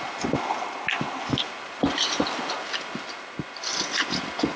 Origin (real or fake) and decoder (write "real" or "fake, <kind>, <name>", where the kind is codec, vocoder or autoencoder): real